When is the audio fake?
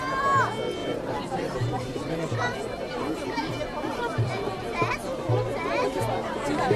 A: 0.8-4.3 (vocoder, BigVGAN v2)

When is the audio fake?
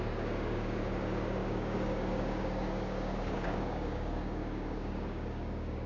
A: 0.0-5.9 (codec, DAC)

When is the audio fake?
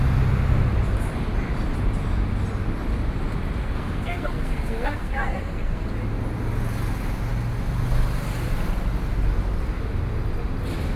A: 3.6-5.9 (codec, SNAC)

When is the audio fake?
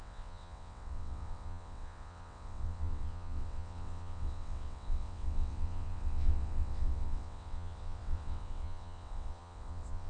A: 0.0-10.1 (vocoder, WaveNeXt)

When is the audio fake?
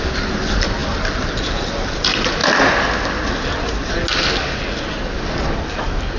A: none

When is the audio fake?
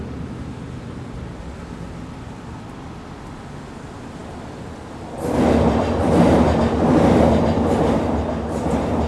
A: none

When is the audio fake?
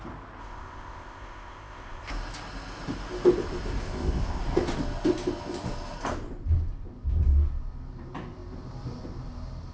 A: 0.4-2.1 (codec, ZipCodec); 3.8-4.4